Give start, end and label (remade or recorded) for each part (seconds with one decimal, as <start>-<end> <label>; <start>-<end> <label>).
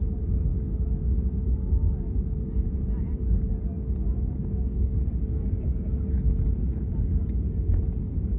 0.0-8.4 recorded